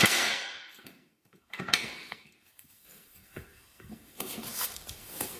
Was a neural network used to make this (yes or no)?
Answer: yes